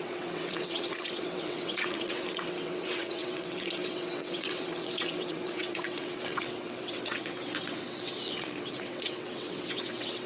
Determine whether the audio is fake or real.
fake